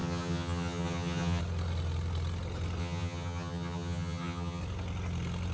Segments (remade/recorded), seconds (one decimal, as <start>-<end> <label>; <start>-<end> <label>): 0.0-1.4 remade; 1.4-2.8 recorded; 2.8-4.6 remade; 4.6-5.5 recorded